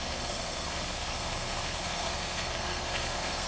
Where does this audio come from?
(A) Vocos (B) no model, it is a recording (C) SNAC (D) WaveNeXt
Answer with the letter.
C